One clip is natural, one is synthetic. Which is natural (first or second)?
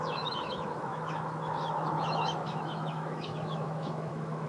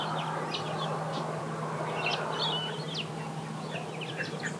second